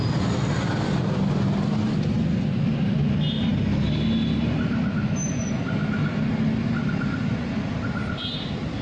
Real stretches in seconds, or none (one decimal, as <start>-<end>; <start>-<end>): 0.0-8.8